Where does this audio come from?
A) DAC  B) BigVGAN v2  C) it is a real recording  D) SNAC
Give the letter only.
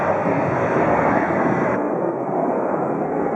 D